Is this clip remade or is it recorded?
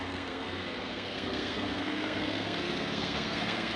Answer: remade